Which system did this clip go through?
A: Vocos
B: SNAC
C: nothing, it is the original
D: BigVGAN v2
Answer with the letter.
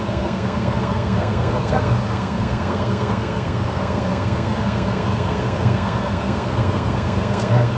B